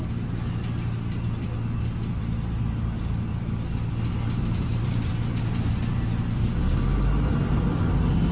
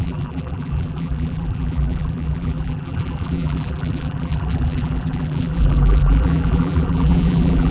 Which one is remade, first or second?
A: second